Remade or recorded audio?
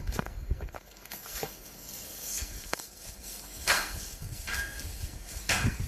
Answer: remade